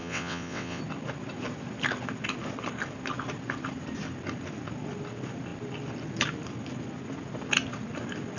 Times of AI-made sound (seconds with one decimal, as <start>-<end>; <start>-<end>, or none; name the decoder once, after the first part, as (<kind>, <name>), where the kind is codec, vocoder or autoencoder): 0.0-0.8 (vocoder, WaveNeXt)

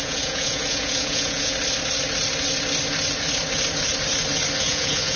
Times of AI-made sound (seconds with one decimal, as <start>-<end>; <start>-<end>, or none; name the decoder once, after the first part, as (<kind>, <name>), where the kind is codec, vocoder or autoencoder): 0.0-1.5 (vocoder, Vocos); 4.6-5.2

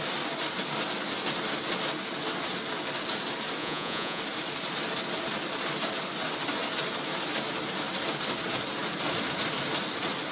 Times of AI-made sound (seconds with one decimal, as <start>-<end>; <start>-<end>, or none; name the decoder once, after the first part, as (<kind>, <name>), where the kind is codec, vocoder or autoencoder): 3.6-4.2 (vocoder, Vocos)

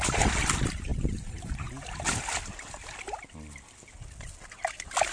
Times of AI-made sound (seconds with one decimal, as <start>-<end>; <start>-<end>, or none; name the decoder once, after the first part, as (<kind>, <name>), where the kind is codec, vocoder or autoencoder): none